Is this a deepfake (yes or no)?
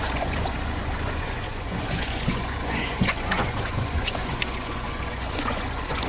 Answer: yes